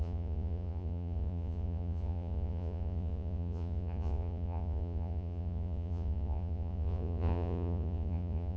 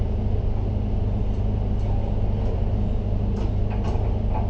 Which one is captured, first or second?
second